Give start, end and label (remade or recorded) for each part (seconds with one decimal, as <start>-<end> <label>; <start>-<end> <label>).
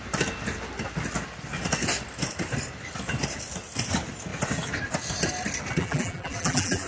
0.0-5.8 recorded; 5.8-6.9 remade